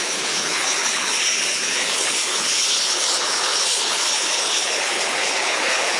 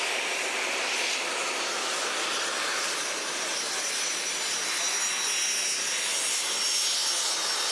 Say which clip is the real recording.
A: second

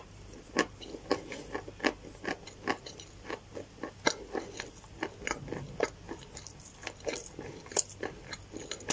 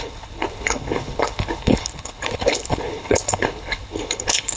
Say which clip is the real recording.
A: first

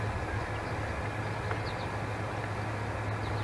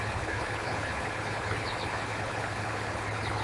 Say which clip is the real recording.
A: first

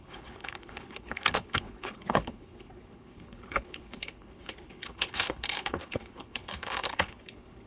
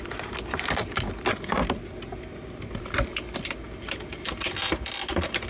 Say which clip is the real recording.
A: second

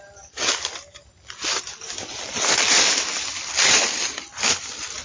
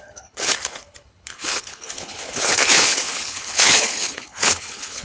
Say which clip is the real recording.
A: first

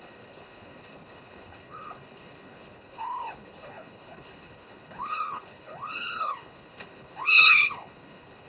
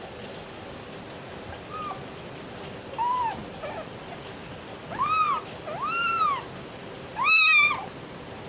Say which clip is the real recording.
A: second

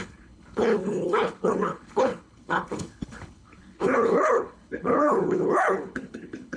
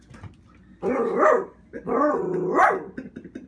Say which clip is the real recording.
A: second